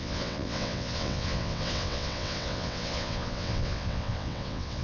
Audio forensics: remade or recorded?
remade